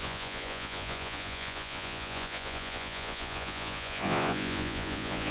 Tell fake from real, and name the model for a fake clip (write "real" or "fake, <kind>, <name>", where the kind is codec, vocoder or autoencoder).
fake, vocoder, Vocos